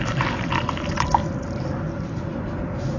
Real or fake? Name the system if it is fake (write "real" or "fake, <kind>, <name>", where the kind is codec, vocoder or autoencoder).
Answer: real